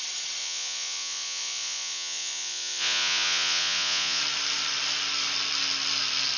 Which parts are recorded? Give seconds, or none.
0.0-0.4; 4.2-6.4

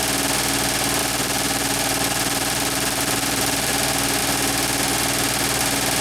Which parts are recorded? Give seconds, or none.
0.0-1.0; 3.7-6.0

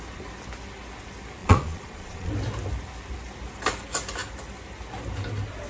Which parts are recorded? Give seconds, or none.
0.0-1.4; 2.3-5.7

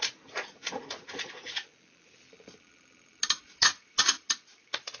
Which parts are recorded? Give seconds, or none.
1.6-3.4